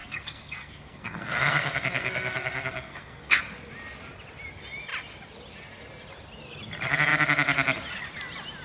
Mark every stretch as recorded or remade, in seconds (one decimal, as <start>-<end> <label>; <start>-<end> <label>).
0.0-3.4 remade; 3.4-8.6 recorded